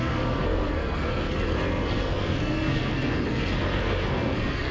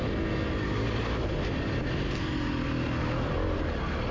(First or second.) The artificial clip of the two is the first